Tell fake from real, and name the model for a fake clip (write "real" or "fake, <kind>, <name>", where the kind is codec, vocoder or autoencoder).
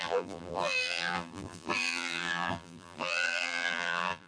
fake, vocoder, BigVGAN v2